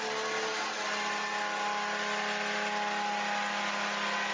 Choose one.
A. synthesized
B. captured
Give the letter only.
B